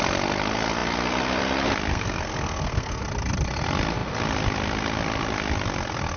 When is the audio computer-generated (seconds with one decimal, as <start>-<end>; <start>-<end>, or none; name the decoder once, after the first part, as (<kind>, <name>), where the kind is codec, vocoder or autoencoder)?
1.9-3.0 (codec, SNAC)